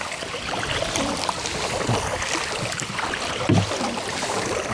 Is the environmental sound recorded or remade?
recorded